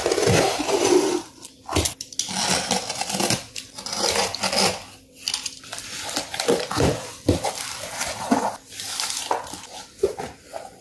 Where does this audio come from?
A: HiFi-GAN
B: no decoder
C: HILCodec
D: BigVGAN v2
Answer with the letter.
B